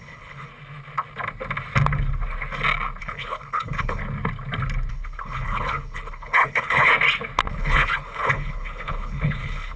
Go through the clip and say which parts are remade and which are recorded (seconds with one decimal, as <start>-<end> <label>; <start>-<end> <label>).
0.0-0.5 remade; 0.5-3.0 recorded; 3.0-4.0 remade; 4.0-4.9 recorded; 4.9-6.9 remade; 6.9-7.5 recorded; 7.5-9.8 remade